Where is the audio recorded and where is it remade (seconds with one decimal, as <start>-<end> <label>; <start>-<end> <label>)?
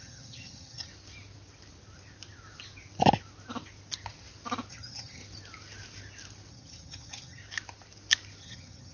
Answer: 0.0-0.9 remade; 0.9-4.7 recorded; 4.7-5.2 remade; 5.2-6.5 recorded; 6.5-7.4 remade; 7.4-8.4 recorded; 8.4-8.9 remade